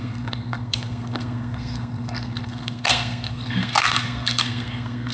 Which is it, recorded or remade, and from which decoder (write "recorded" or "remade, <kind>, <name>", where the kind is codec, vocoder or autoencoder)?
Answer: remade, codec, SNAC